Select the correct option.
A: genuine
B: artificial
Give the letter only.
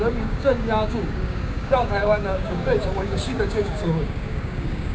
B